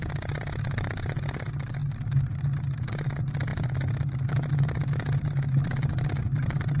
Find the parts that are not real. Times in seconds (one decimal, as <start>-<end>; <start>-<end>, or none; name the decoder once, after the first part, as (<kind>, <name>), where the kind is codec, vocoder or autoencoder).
none